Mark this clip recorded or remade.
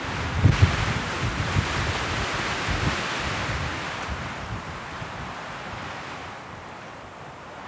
recorded